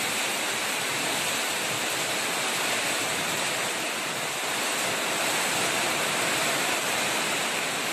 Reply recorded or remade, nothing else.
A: remade